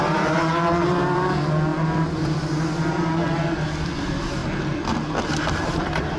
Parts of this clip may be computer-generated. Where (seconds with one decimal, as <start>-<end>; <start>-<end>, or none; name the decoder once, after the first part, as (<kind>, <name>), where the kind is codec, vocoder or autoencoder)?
0.0-1.7 (vocoder, BigVGAN v2); 4.0-4.4; 5.1-6.2